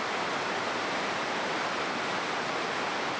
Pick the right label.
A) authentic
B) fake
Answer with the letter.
B